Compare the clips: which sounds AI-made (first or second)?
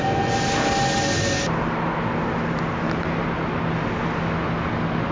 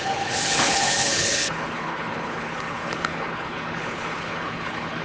second